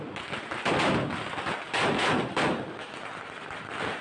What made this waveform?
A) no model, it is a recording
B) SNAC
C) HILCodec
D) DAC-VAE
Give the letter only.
A